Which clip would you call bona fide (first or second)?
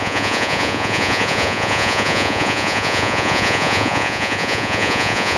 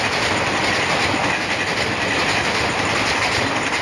second